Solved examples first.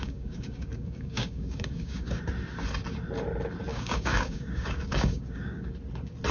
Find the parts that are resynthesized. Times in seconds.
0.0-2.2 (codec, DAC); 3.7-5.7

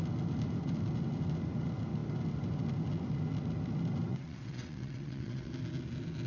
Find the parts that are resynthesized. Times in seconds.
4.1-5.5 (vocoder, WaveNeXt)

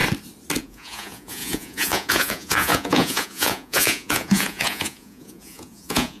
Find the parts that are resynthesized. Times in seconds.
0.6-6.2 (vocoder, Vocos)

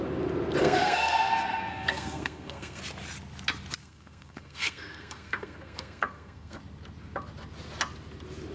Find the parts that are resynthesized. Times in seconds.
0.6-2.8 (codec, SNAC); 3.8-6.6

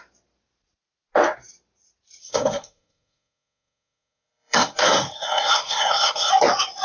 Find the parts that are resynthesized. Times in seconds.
2.2-6.3 (codec, SNAC)

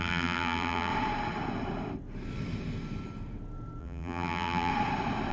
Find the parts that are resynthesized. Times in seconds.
0.0-0.9 (vocoder, BigVGAN v2); 3.8-4.7

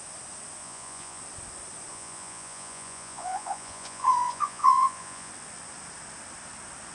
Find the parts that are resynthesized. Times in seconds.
0.6-1.2 (vocoder, Vocos); 1.9-5.3

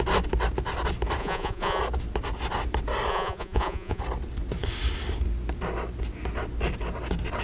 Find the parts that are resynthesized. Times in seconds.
1.2-1.8 (vocoder, Vocos); 3.1-4.0